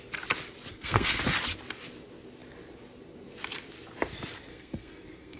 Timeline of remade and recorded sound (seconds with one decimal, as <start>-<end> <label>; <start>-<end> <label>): 0.0-0.7 recorded; 0.7-1.2 remade; 1.2-4.5 recorded; 4.5-5.4 remade